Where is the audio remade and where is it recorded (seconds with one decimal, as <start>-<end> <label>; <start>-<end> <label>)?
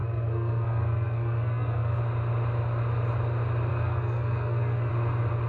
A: 0.0-2.0 remade; 2.0-3.7 recorded; 3.7-4.9 remade; 4.9-5.5 recorded